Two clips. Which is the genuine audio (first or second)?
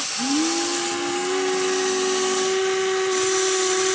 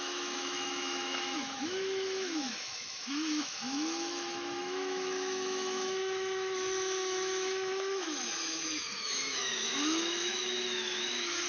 first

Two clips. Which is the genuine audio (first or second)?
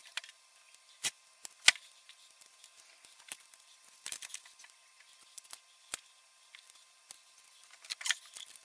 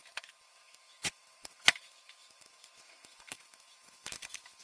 first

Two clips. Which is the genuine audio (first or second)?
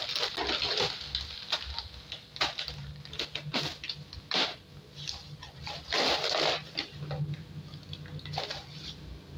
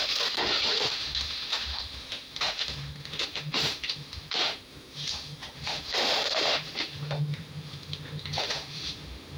first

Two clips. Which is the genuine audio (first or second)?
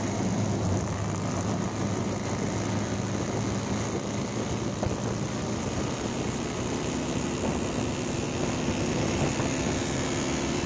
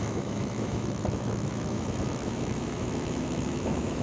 first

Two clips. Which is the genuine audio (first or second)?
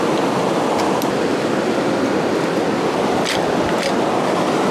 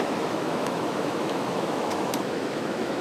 first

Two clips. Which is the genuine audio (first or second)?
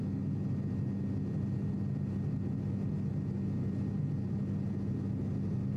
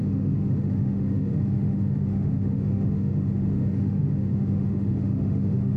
first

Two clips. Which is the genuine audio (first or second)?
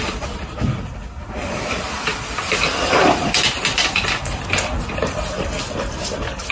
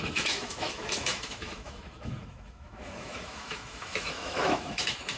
first